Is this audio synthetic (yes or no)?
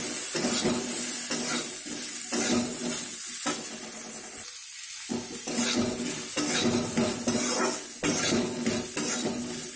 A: no